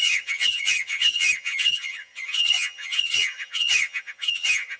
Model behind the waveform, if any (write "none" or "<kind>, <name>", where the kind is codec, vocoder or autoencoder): vocoder, HiFi-GAN